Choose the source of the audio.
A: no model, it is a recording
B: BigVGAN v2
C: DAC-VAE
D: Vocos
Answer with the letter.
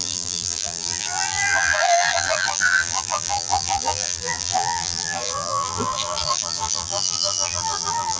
B